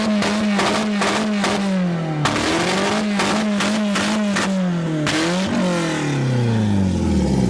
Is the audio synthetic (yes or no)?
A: no